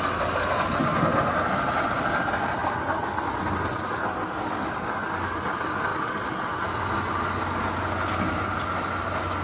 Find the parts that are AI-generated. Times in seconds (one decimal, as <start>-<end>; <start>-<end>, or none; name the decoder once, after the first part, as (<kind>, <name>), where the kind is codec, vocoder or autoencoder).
none